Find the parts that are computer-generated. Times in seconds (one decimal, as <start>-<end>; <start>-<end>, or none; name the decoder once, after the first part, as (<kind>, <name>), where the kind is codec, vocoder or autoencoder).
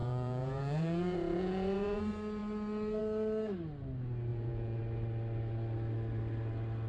0.0-2.0 (vocoder, Vocos); 4.3-4.8